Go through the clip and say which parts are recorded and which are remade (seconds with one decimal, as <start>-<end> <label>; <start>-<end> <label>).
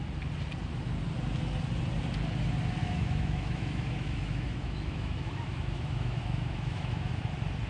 0.0-2.8 recorded; 2.8-7.2 remade; 7.2-7.7 recorded